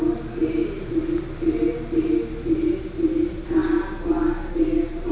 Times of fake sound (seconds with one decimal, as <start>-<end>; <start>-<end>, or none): none